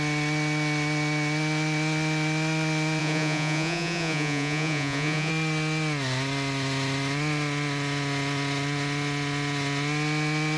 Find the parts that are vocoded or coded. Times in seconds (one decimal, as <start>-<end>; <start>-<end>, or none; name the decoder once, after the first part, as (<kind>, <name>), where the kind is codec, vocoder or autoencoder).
3.0-5.3 (vocoder, Vocos)